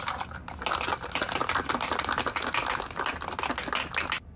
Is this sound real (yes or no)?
yes